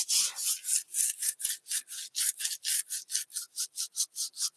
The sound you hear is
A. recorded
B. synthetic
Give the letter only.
A